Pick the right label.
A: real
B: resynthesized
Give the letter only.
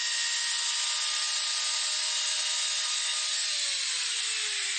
A